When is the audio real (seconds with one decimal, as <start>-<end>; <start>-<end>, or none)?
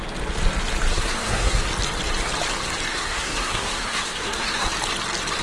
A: 0.0-0.9; 1.6-2.9; 4.7-5.4